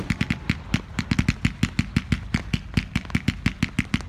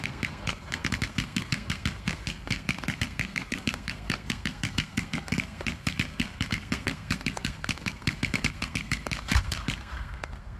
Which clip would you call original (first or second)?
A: first